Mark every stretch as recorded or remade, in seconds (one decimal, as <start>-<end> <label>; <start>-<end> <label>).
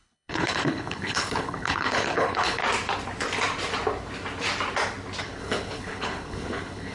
0.0-2.6 remade; 2.6-5.2 recorded; 5.2-6.9 remade